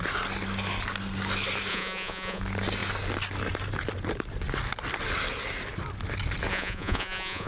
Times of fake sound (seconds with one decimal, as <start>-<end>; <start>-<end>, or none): 1.7-2.4; 6.5-7.5